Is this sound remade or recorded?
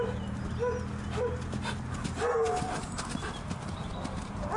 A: recorded